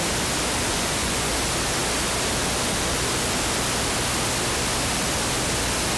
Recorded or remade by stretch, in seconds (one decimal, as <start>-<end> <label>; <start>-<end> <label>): 0.0-0.7 recorded; 0.7-1.3 remade; 1.3-6.0 recorded